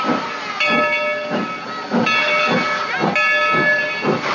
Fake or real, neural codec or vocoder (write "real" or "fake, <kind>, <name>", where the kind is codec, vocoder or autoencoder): real